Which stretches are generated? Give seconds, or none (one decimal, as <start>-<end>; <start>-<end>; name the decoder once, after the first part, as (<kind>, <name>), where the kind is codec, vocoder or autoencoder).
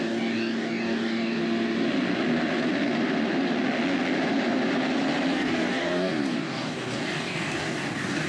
0.0-1.4 (codec, DAC); 5.3-8.3